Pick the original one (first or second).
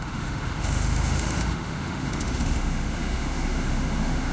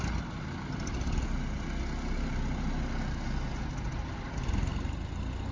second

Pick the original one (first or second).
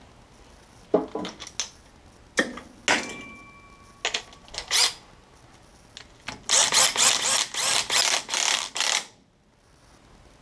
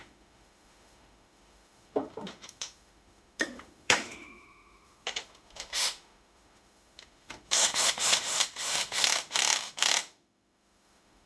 first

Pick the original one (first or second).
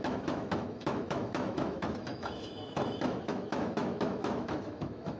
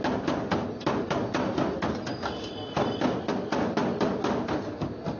second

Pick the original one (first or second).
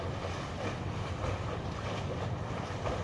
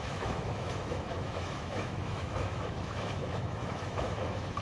first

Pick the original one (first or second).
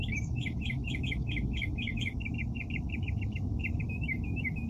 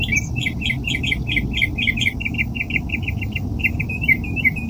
second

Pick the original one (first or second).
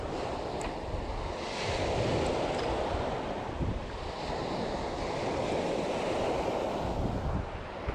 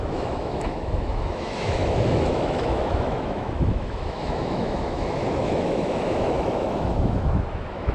first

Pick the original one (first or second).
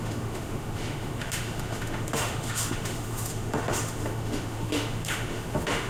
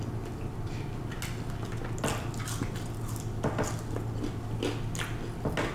second